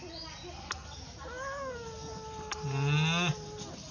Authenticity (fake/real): real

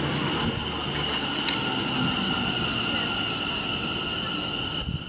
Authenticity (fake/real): real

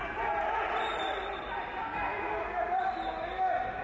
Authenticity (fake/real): real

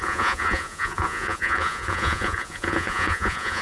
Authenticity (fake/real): fake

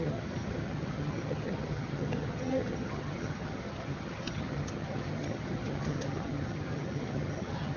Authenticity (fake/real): fake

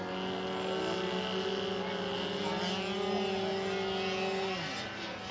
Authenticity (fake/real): real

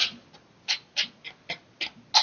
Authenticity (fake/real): real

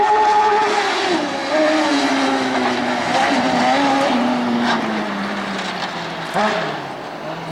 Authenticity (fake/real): real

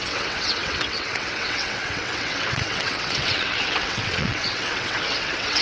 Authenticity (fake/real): fake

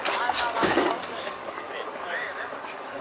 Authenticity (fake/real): fake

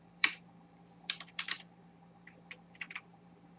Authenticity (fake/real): fake